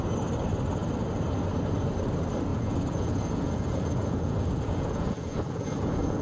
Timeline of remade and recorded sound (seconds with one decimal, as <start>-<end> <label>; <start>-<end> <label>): 0.0-2.5 recorded; 2.5-6.2 remade